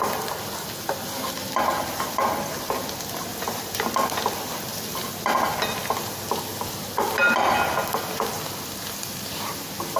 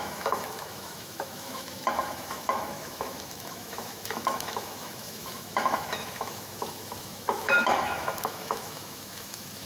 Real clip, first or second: first